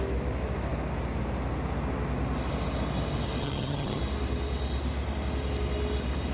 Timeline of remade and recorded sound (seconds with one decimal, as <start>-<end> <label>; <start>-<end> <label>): 0.0-3.4 recorded; 3.4-4.0 remade; 4.0-6.3 recorded